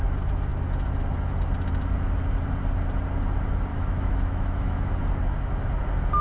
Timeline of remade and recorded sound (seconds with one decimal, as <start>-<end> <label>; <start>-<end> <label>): 0.0-3.7 recorded; 3.7-4.9 remade; 4.9-6.2 recorded